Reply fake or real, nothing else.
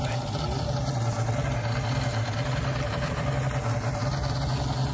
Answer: real